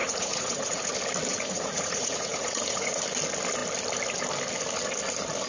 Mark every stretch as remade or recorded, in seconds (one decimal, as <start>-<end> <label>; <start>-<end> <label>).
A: 0.0-0.9 remade; 0.9-1.3 recorded; 1.3-3.0 remade; 3.0-5.5 recorded